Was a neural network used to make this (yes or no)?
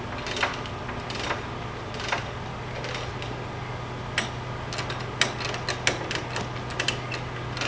no